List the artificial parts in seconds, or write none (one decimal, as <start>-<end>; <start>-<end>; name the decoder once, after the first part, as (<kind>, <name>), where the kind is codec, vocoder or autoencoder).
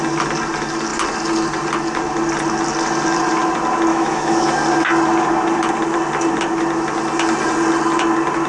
3.9-4.5 (autoencoder, DAC-VAE)